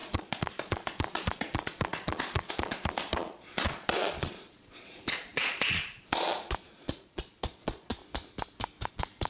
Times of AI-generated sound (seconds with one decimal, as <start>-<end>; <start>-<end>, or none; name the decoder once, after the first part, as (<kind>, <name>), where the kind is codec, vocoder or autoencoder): 0.0-8.0 (vocoder, Vocos); 8.9-9.3